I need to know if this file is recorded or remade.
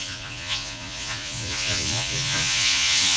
remade